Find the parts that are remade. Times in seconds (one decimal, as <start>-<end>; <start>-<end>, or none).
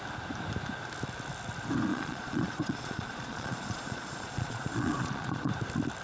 1.9-5.5